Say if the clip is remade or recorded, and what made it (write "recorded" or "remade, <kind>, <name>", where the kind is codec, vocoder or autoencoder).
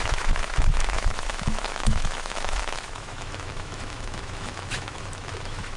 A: remade, autoencoder, DAC-VAE